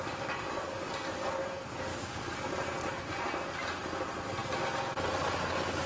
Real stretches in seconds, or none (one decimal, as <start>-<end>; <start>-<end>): 0.0-1.9; 2.5-5.9